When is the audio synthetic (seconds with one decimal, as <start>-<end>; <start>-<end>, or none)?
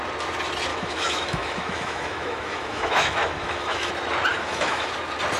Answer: 0.7-3.9; 4.3-4.9